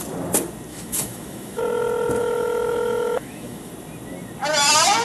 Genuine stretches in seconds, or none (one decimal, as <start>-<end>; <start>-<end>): 0.0-0.7; 1.6-2.2; 3.7-5.0